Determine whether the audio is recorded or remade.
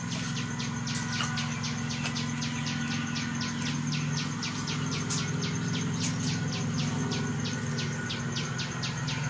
recorded